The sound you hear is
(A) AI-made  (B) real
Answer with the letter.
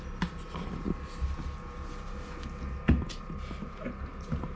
B